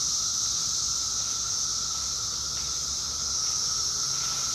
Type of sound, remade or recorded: recorded